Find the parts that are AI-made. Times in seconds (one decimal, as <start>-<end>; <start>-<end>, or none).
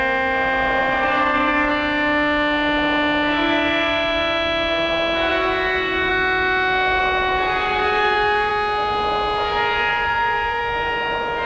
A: 0.8-1.7; 7.0-8.5; 9.9-10.6